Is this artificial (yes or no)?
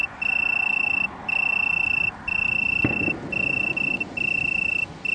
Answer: no